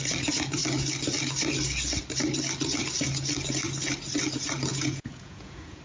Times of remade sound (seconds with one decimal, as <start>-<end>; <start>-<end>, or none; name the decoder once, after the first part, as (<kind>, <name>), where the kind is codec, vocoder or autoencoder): 4.7-5.8 (vocoder, Vocos)